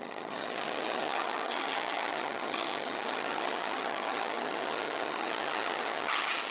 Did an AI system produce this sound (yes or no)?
yes